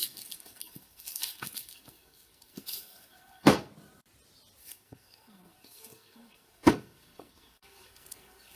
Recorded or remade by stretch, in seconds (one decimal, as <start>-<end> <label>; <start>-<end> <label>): 0.0-3.7 remade; 3.7-4.6 recorded; 4.6-8.6 remade